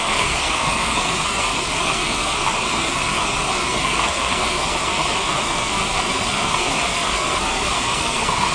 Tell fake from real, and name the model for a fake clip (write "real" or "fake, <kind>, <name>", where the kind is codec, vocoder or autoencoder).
fake, codec, SNAC